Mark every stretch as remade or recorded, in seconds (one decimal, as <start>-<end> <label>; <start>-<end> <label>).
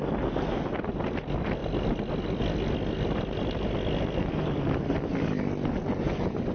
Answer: 0.0-6.5 recorded